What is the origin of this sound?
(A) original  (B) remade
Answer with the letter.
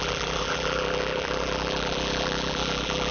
B